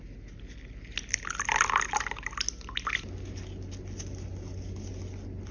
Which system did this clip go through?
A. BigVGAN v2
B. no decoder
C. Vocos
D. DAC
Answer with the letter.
B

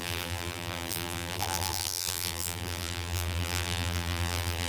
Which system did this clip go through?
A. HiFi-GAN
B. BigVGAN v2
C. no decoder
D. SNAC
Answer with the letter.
B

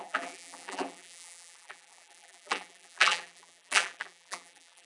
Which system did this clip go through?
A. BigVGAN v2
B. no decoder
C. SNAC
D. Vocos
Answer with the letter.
A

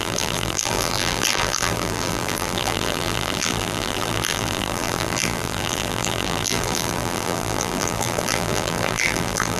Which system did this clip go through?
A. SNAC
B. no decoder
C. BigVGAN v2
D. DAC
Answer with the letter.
C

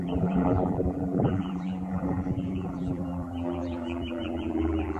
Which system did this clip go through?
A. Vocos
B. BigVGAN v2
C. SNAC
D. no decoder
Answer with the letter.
B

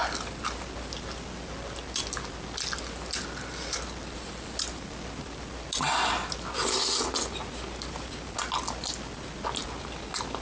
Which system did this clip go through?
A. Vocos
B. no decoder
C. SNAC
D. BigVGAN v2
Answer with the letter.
B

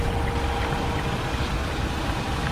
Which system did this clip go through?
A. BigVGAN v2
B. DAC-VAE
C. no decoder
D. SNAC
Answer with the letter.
C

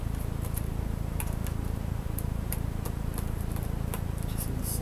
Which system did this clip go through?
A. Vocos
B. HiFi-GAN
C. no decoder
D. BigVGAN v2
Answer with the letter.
D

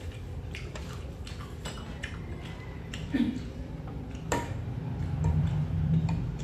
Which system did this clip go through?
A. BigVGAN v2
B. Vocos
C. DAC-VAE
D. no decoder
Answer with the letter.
A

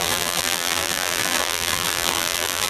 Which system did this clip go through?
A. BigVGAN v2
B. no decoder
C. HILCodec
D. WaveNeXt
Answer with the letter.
A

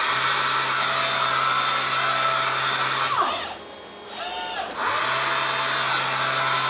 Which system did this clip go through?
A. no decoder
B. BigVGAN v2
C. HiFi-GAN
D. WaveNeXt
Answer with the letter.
A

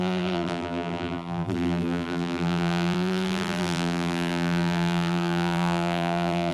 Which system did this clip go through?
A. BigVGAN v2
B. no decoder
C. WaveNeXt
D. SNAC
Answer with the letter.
A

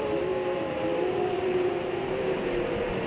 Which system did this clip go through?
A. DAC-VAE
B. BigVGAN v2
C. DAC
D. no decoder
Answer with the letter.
B